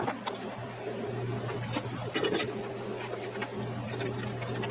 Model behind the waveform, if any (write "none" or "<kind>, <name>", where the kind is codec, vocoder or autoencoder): none